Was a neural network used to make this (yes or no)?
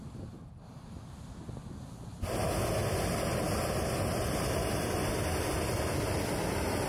no